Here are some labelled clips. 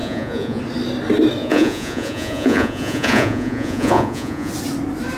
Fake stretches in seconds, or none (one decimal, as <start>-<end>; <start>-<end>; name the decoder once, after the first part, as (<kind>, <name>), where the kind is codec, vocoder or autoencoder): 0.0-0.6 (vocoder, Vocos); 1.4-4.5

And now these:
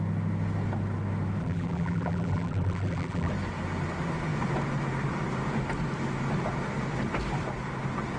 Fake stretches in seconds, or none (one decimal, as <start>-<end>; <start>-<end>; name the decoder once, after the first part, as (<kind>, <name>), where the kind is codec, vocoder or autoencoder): 1.4-3.3 (vocoder, BigVGAN v2)

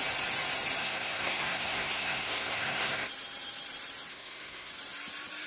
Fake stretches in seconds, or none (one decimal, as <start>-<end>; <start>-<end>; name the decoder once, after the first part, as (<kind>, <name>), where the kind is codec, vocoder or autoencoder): 0.8-3.1 (codec, SNAC); 4.1-4.7

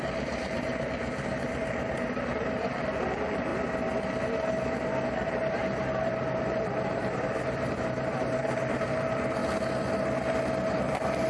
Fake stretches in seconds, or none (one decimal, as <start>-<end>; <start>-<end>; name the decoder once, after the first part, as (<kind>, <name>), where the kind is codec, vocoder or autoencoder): 0.0-3.5 (vocoder, BigVGAN v2); 5.1-9.4; 10.7-11.3